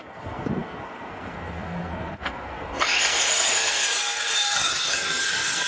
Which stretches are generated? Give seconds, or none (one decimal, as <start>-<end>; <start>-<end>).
0.0-5.7